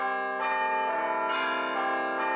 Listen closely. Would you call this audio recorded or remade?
recorded